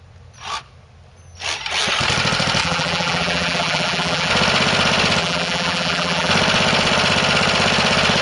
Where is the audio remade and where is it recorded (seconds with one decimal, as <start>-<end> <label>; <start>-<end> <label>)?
0.0-2.6 recorded; 2.6-4.3 remade; 4.3-5.2 recorded; 5.2-6.3 remade; 6.3-8.2 recorded